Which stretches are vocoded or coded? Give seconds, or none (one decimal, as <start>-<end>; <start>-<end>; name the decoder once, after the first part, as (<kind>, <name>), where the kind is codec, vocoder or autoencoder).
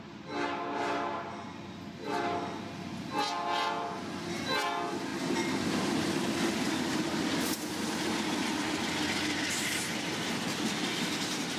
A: none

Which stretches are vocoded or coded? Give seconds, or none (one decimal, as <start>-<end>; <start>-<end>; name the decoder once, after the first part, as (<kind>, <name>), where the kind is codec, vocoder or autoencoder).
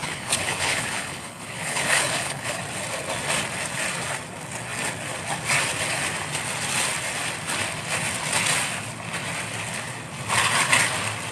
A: 0.0-2.6 (codec, HILCodec)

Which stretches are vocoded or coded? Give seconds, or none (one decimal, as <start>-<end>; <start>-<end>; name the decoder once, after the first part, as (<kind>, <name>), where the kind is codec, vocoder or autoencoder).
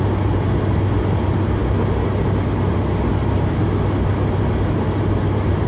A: none